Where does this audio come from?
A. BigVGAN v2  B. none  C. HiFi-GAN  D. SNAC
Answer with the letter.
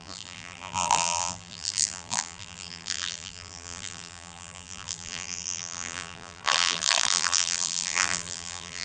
A